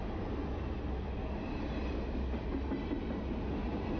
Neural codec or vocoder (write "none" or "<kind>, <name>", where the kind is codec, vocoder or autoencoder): none